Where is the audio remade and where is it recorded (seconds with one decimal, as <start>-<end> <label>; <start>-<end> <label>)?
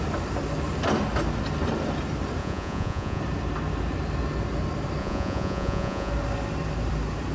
0.0-2.4 recorded; 2.4-3.2 remade; 3.2-5.0 recorded; 5.0-6.1 remade; 6.1-7.3 recorded